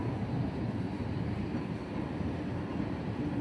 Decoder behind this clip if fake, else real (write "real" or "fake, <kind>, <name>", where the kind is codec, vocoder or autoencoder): real